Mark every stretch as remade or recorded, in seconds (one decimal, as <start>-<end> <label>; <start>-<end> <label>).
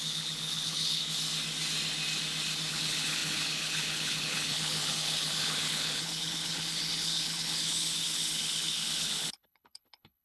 0.0-1.0 remade; 1.0-2.7 recorded; 2.7-10.2 remade